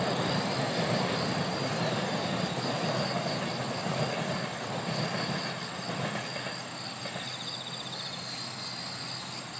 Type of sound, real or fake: real